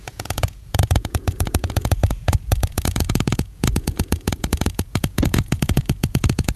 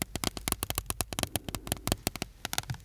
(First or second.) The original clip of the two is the second